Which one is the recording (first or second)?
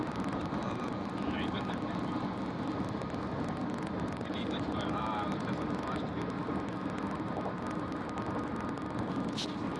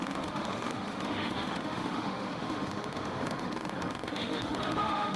first